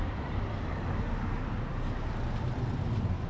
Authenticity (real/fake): real